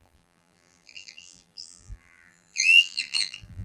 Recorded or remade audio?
remade